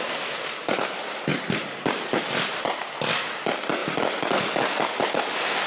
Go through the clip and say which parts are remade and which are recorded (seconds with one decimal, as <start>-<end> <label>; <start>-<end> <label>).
0.0-5.7 recorded